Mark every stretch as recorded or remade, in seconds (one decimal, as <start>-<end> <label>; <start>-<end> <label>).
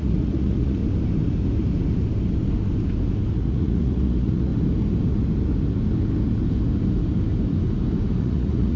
0.0-0.8 remade; 0.8-3.3 recorded; 3.3-4.5 remade; 4.5-8.2 recorded; 8.2-8.8 remade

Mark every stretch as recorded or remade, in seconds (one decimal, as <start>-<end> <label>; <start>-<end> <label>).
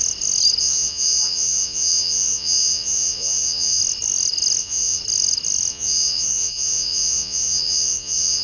0.0-0.6 recorded; 0.6-3.8 remade; 3.8-4.6 recorded; 4.6-5.0 remade; 5.0-5.7 recorded; 5.7-8.4 remade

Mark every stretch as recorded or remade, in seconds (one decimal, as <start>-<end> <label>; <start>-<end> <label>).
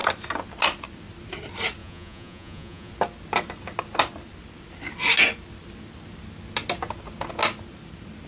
0.0-1.8 recorded; 1.8-2.9 remade; 2.9-8.3 recorded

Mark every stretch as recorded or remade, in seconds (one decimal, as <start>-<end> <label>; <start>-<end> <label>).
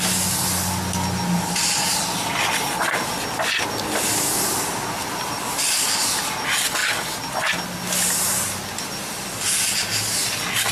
0.0-10.7 recorded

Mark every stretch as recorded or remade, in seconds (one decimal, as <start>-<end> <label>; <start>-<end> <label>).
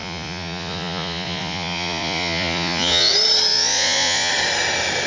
0.0-3.1 remade; 3.1-3.5 recorded; 3.5-4.3 remade; 4.3-5.1 recorded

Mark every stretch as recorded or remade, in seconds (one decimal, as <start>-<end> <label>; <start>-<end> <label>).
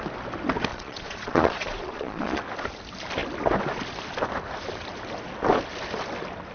0.0-0.7 recorded; 0.7-2.4 remade; 2.4-6.5 recorded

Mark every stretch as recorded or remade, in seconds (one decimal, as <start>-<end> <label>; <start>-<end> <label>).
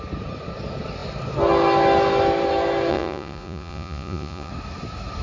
0.0-2.9 recorded; 2.9-4.5 remade; 4.5-5.2 recorded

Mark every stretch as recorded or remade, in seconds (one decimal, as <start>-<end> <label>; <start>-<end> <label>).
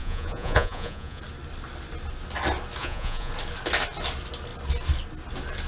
0.0-1.2 remade; 1.2-2.8 recorded; 2.8-3.3 remade; 3.3-5.7 recorded